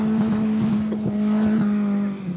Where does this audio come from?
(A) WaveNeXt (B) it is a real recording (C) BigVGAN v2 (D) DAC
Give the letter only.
B